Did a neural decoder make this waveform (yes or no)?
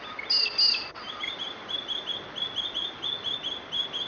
no